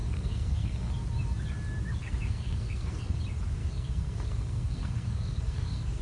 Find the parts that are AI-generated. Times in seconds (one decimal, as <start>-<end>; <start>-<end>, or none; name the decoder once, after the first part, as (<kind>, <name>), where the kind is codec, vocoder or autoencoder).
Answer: 0.0-0.9 (codec, SNAC); 2.0-3.2; 3.6-6.0

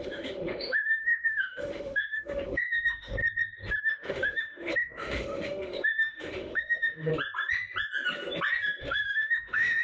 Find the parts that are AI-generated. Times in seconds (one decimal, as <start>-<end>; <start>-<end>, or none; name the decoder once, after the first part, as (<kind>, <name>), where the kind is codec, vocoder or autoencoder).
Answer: 0.0-3.2 (autoencoder, DAC-VAE); 3.8-7.1; 8.8-9.8

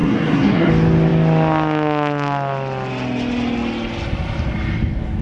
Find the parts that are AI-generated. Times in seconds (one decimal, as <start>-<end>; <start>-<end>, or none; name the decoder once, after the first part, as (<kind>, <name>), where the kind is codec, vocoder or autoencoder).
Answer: 0.0-0.7 (codec, SNAC)

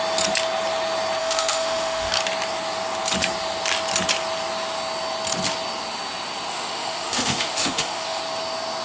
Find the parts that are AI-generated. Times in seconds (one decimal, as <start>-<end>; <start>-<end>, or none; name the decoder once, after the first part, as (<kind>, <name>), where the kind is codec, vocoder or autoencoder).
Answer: 1.2-2.1 (autoencoder, DAC-VAE); 6.5-8.2

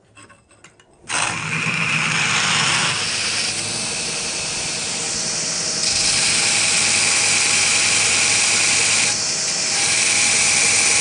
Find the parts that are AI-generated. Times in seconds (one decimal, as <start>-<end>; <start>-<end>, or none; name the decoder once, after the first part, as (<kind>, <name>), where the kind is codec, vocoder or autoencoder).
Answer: none

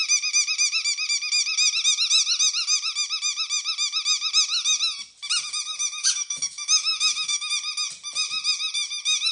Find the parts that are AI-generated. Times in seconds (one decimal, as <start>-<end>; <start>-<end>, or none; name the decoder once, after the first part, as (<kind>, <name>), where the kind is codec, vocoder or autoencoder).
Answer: 6.0-7.5 (autoencoder, DAC-VAE)

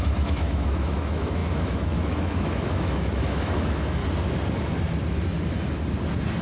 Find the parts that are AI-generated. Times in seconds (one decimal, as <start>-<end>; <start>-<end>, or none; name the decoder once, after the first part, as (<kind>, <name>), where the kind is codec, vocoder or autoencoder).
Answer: 0.0-4.0 (autoencoder, DAC-VAE)